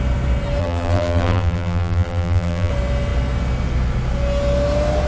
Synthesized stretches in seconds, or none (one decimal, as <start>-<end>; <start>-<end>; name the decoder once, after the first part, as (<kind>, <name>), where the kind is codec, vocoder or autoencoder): 0.6-2.7 (vocoder, BigVGAN v2)